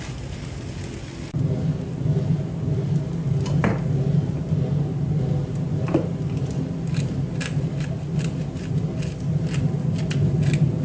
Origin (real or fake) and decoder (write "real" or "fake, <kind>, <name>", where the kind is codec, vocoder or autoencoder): real